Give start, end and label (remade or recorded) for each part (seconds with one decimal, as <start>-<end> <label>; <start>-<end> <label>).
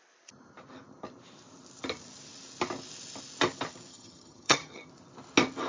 0.0-3.9 recorded; 3.9-4.9 remade; 4.9-5.7 recorded